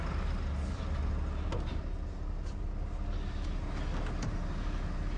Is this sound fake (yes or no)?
no